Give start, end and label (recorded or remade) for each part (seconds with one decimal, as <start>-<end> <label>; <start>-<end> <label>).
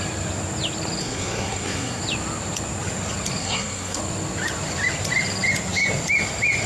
0.0-1.0 recorded; 1.0-2.0 remade; 2.0-3.4 recorded; 3.4-4.0 remade; 4.0-6.7 recorded